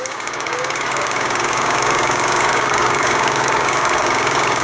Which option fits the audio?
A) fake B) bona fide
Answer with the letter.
A